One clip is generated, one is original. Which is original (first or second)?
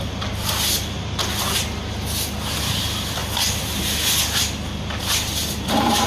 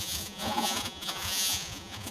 first